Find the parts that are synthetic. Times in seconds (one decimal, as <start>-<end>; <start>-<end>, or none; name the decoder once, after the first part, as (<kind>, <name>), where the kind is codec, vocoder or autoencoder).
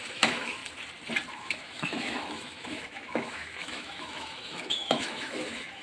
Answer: 0.0-0.6 (autoencoder, DAC-VAE); 1.3-5.8